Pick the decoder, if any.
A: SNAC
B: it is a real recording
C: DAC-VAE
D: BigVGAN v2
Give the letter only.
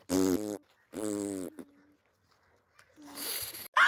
B